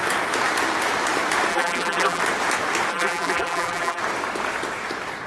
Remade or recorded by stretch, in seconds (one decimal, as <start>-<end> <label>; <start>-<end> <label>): 0.0-1.5 recorded; 1.5-2.2 remade; 2.2-2.9 recorded; 2.9-4.0 remade; 4.0-5.3 recorded